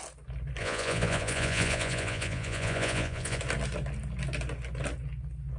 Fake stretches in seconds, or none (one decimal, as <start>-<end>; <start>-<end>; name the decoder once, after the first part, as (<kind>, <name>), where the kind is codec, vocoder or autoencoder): 0.6-3.4 (vocoder, Vocos)

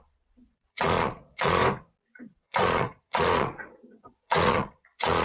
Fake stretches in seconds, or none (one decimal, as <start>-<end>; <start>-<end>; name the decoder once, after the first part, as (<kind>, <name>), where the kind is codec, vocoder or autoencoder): 0.0-1.6 (vocoder, Vocos); 2.2-5.2

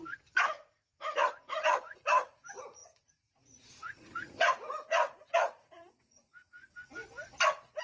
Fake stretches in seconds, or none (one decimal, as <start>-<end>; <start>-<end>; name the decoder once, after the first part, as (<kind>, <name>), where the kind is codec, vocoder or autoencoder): 0.0-6.6 (vocoder, Vocos)

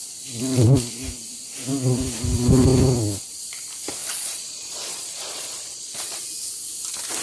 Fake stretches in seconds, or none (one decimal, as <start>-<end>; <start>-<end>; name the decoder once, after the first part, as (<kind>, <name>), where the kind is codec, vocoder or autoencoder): 4.0-6.2 (vocoder, Vocos)

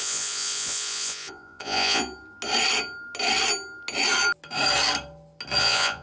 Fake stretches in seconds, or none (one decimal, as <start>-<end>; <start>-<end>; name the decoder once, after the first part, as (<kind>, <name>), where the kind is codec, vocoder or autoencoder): 0.0-2.0 (vocoder, Vocos); 5.6-6.0

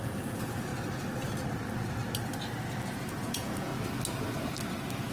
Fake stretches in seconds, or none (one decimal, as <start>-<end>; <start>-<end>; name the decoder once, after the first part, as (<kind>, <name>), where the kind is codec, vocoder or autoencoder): 0.0-0.7 (vocoder, Vocos); 2.8-3.7

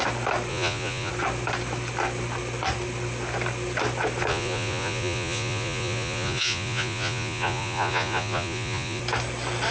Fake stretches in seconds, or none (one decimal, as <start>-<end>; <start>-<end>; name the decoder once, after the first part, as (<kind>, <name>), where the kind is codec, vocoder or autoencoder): 0.5-1.1 (vocoder, Vocos); 4.3-9.0